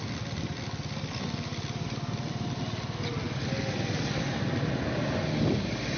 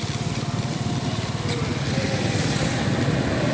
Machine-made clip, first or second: second